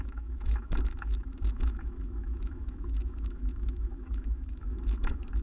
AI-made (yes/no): yes